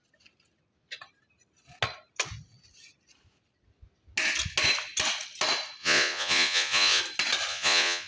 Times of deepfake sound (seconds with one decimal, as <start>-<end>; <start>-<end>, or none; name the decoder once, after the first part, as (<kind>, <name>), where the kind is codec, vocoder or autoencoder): 5.8-7.0 (vocoder, Vocos); 7.5-8.1